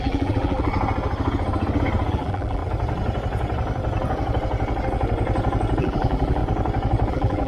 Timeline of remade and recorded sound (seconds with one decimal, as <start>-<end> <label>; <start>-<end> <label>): 0.0-0.7 remade; 0.7-2.1 recorded; 2.1-2.6 remade; 2.6-5.8 recorded; 5.8-6.4 remade; 6.4-7.1 recorded; 7.1-7.5 remade